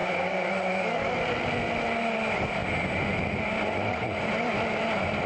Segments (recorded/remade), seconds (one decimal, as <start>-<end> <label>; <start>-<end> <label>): 0.0-0.5 remade; 0.5-5.3 recorded